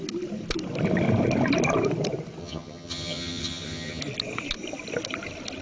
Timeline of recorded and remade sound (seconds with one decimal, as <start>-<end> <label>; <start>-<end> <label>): 0.0-2.4 recorded; 2.4-4.0 remade; 4.0-5.6 recorded